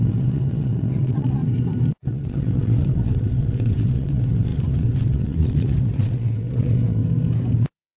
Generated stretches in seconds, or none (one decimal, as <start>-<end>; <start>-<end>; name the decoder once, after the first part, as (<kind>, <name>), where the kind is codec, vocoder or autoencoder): 0.0-1.4 (vocoder, WaveNeXt); 1.9-7.0; 7.6-8.0